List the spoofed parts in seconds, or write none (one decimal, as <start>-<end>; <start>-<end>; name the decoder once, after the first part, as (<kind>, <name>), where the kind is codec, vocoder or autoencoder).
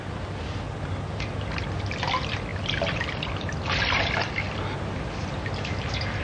none